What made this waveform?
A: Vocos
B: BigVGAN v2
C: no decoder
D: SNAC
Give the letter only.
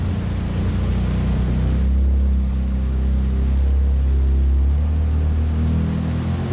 C